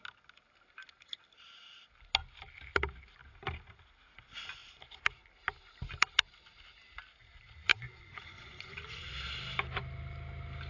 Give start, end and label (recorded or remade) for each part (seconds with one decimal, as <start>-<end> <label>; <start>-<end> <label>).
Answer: 0.0-7.7 recorded; 7.7-9.0 remade; 9.0-10.7 recorded